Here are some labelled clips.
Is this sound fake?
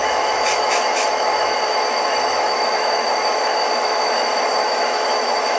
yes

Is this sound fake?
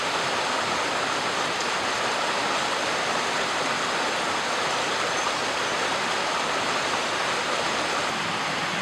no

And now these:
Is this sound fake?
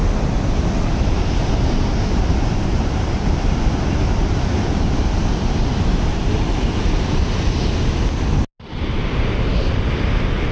no